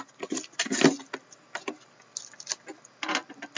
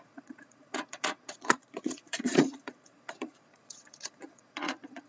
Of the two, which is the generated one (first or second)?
second